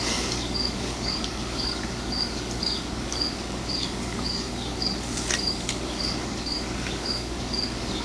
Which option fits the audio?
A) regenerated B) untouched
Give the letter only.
A